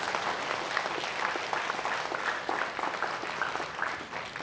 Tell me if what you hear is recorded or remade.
recorded